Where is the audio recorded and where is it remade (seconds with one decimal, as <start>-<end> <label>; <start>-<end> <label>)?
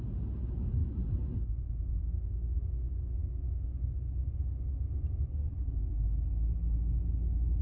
0.0-7.6 recorded